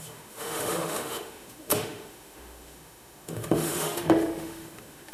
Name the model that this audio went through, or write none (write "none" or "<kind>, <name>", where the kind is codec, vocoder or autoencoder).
autoencoder, DAC-VAE